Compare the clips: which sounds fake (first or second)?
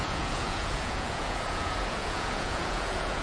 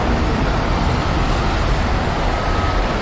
first